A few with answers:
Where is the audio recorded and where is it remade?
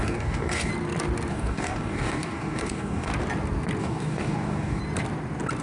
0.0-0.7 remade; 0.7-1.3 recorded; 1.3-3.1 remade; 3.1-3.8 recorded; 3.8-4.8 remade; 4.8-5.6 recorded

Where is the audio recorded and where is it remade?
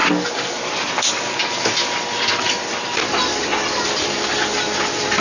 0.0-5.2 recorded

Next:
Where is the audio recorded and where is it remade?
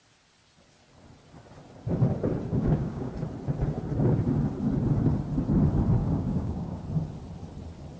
0.0-2.5 recorded; 2.5-3.1 remade; 3.1-6.0 recorded; 6.0-6.8 remade; 6.8-8.0 recorded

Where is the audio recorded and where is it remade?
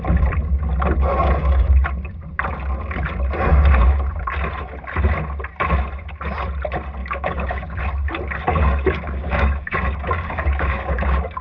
0.0-7.0 recorded; 7.0-7.8 remade; 7.8-8.5 recorded; 8.5-11.4 remade